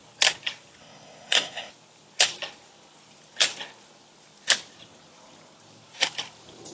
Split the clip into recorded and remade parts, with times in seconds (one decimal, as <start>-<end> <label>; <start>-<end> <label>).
0.0-0.8 recorded; 0.8-1.7 remade; 1.7-6.7 recorded